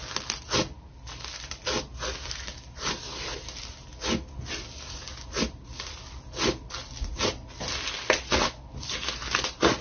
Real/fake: real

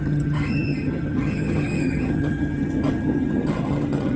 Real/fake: fake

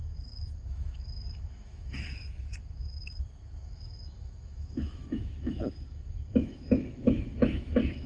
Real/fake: fake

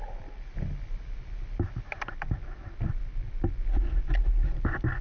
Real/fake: real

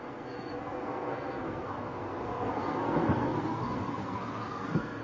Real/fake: fake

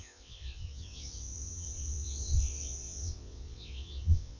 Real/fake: fake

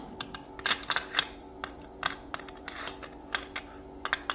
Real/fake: real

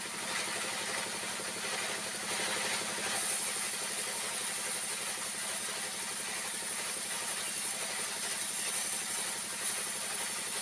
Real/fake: real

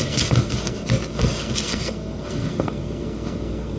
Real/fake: fake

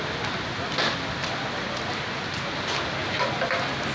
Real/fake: real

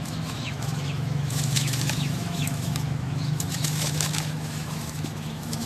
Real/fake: fake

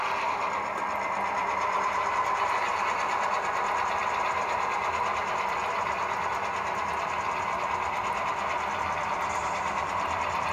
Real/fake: real